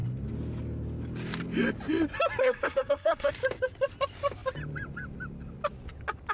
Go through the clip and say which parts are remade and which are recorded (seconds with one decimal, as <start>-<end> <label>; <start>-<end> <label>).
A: 0.0-2.4 recorded; 2.4-3.3 remade; 3.3-6.3 recorded